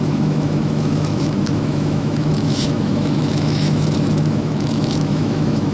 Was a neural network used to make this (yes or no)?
yes